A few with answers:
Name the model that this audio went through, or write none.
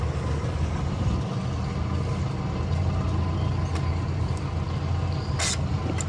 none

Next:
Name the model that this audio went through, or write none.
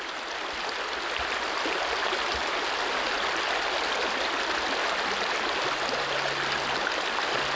none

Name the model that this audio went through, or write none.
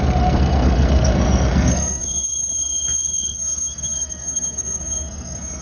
codec, SNAC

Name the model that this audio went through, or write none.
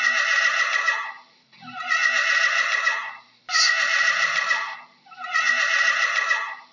none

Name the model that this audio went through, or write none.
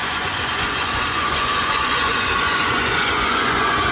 vocoder, Vocos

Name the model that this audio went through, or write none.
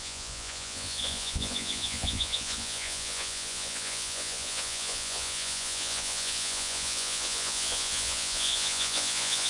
vocoder, Vocos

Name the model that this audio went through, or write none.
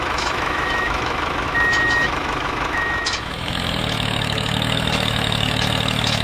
autoencoder, DAC-VAE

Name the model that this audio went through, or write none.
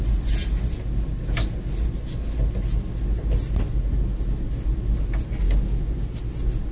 none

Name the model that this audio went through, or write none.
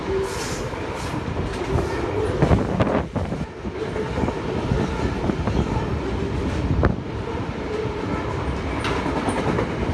none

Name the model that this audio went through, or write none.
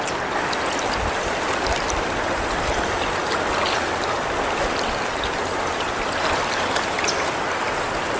none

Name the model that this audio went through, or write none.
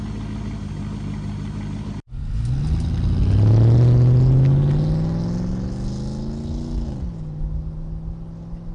none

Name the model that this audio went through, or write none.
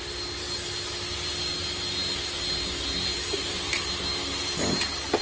none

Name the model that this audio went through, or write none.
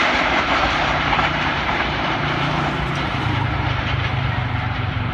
vocoder, BigVGAN v2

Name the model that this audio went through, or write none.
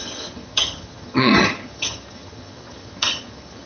vocoder, HiFi-GAN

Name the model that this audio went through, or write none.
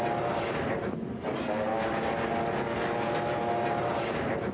none